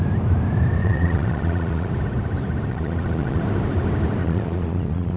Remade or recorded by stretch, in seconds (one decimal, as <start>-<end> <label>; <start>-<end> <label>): 0.0-0.8 recorded; 0.8-1.9 remade; 1.9-2.7 recorded; 2.7-3.4 remade; 3.4-4.2 recorded; 4.2-5.2 remade